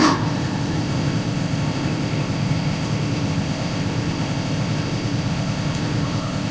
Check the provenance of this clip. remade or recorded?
remade